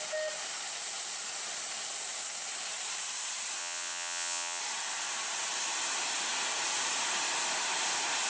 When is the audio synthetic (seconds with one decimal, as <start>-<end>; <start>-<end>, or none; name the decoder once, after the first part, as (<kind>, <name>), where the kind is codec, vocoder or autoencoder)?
3.6-4.6 (vocoder, WaveNeXt)